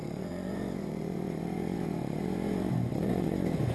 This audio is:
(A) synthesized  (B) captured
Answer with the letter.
A